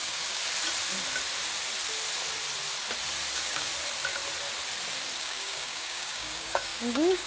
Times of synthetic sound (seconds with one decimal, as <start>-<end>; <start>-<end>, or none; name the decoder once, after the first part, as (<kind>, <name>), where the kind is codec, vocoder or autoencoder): 0.0-0.4 (codec, DAC); 3.3-3.7; 5.2-7.3